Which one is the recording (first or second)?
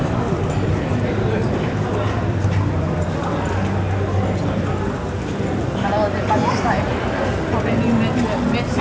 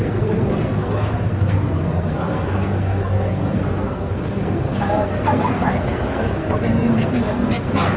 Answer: first